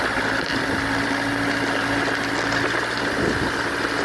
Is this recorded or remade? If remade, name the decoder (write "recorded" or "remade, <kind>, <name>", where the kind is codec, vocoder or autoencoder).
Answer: recorded